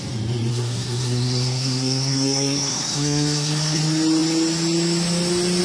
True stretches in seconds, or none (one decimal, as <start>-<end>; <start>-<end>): 0.0-0.5; 3.8-5.6

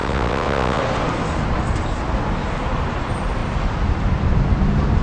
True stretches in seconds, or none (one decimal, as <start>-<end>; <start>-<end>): 0.8-5.0

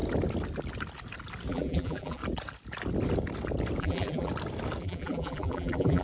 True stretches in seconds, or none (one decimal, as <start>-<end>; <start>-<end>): 0.0-1.5; 2.2-3.8; 4.3-4.8